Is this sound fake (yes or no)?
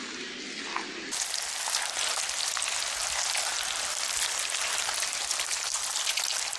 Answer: no